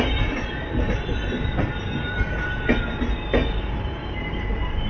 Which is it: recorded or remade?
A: recorded